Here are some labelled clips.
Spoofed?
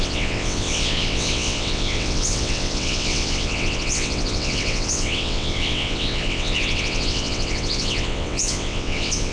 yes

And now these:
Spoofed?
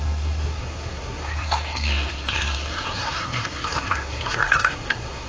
yes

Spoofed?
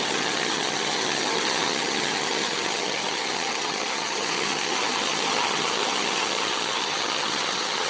yes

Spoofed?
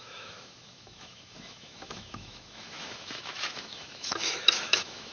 yes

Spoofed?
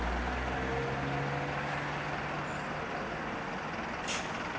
no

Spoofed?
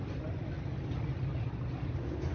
no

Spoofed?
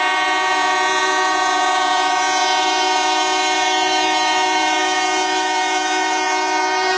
yes